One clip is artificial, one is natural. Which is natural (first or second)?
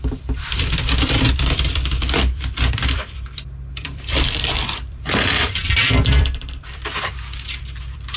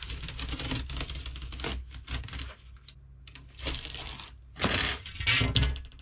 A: second